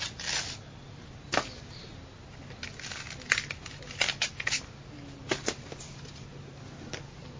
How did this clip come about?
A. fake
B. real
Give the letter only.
B